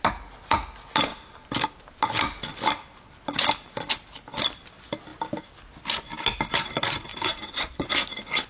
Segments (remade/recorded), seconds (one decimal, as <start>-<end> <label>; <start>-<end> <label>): 0.0-7.1 recorded; 7.1-7.9 remade; 7.9-8.5 recorded